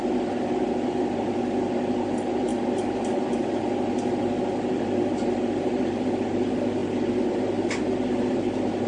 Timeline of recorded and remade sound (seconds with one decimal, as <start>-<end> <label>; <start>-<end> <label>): 0.0-8.9 recorded